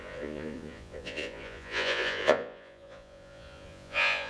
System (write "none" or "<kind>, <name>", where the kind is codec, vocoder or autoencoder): vocoder, Vocos